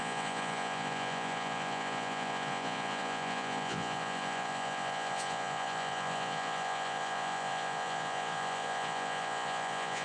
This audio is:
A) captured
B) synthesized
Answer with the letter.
B